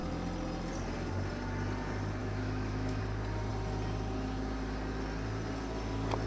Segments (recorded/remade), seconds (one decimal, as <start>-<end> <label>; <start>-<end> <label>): 0.0-2.2 recorded; 2.2-3.0 remade; 3.0-6.3 recorded